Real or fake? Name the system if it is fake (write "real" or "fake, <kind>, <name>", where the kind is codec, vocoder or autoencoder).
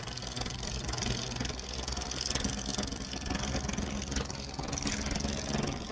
real